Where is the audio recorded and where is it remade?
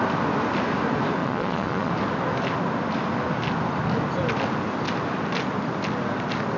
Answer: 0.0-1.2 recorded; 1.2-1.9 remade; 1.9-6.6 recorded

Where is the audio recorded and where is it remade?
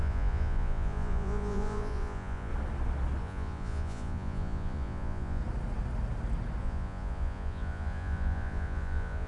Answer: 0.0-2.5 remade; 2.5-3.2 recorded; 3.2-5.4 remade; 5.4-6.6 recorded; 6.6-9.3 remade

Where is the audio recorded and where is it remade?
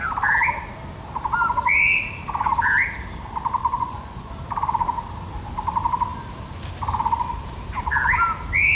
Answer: 0.0-3.6 recorded; 3.6-4.3 remade; 4.3-8.8 recorded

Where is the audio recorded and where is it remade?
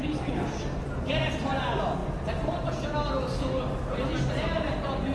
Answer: 0.0-5.1 recorded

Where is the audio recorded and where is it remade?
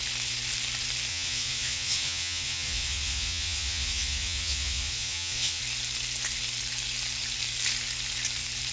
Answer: 0.0-1.1 recorded; 1.1-5.6 remade; 5.6-8.7 recorded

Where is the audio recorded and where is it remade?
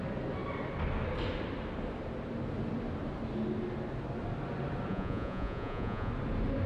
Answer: 0.0-4.9 recorded; 4.9-6.1 remade; 6.1-6.7 recorded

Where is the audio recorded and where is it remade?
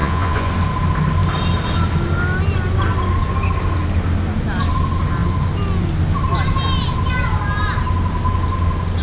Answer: 0.0-0.5 remade; 0.5-9.0 recorded